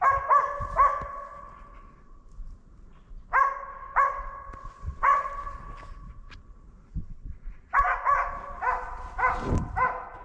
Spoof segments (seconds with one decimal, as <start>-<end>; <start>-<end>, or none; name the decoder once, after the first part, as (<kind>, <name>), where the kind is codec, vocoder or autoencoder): 3.8-5.3 (vocoder, WaveNeXt); 7.0-7.8